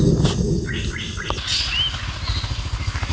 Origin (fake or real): real